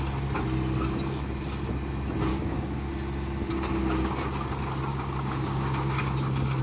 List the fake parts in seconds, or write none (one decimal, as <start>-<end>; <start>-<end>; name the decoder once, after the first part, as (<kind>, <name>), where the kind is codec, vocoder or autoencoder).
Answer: 2.3-2.9 (codec, DAC); 4.9-6.6

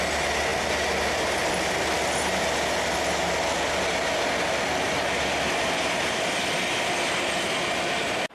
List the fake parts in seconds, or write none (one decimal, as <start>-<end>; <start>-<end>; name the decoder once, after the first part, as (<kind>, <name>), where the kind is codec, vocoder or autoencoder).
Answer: 0.5-1.6 (vocoder, BigVGAN v2)

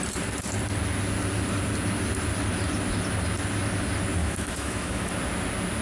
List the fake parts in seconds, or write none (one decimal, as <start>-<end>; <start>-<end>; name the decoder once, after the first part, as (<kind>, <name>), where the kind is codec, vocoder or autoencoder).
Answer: 4.2-5.1 (autoencoder, DAC-VAE)